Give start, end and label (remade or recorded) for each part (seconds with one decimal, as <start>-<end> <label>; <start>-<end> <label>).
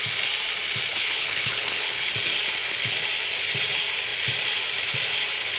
0.0-0.9 recorded; 0.9-2.1 remade; 2.1-5.6 recorded